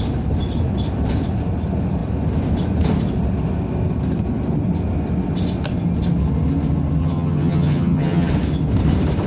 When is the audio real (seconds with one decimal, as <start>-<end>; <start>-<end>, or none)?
0.0-7.0; 8.3-9.3